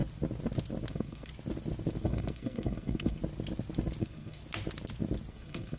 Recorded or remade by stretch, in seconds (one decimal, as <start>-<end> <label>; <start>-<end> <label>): 0.0-0.9 recorded; 0.9-1.3 remade; 1.3-2.0 recorded; 2.0-3.2 remade; 3.2-4.0 recorded; 4.0-4.4 remade; 4.4-5.3 recorded; 5.3-5.8 remade